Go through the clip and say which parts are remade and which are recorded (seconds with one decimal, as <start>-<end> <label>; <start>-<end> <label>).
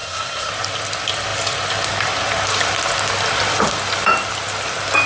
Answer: 0.0-0.5 remade; 0.5-5.1 recorded